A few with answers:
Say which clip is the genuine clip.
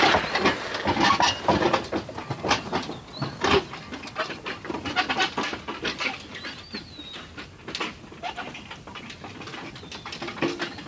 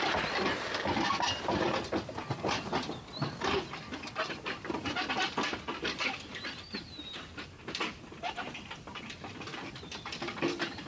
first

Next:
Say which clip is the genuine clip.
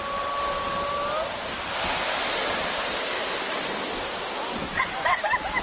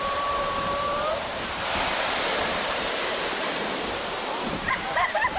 first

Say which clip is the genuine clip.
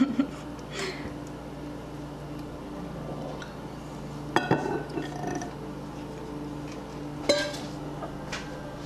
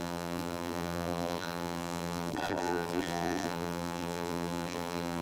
first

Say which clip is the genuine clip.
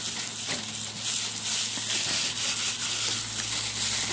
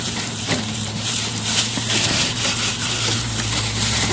first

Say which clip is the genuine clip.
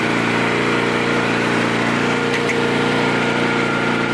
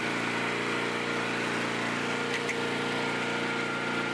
second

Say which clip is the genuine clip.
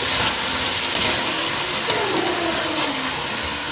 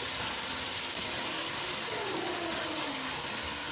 first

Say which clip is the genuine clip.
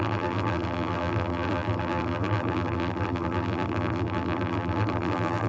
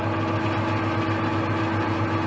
second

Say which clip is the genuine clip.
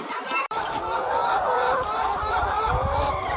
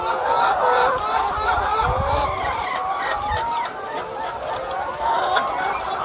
second